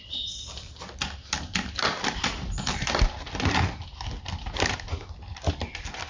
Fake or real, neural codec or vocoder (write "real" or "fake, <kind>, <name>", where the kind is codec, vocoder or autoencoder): real